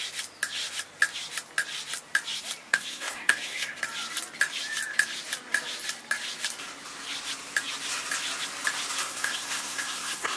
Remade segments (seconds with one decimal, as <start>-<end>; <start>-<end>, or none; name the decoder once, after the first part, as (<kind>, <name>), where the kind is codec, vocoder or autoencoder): 2.6-3.8 (codec, SNAC); 9.0-10.4